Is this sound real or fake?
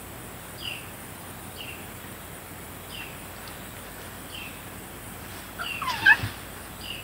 real